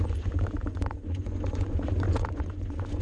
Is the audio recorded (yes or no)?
no